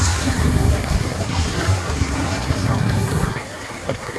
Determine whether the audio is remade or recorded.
remade